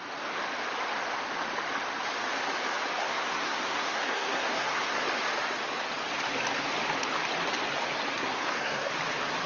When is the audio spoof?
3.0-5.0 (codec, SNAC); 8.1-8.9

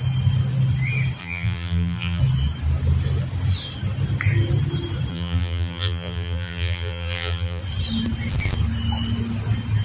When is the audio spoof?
1.2-2.2 (vocoder, BigVGAN v2); 5.1-7.6

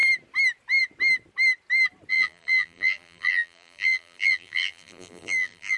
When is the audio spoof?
2.1-5.8 (vocoder, BigVGAN v2)

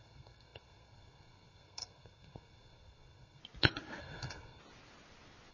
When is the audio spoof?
0.0-3.4 (codec, SNAC); 4.0-4.6

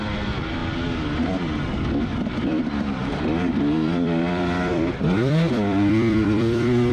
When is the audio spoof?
0.0-0.6 (vocoder, BigVGAN v2); 2.6-6.9

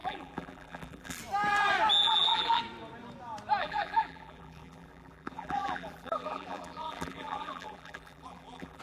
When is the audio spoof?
0.0-1.2 (vocoder, BigVGAN v2); 2.0-2.6; 3.6-8.8